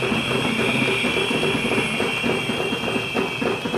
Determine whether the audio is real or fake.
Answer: real